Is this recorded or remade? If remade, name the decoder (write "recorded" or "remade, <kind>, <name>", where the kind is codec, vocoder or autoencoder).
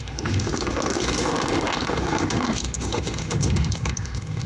remade, autoencoder, DAC-VAE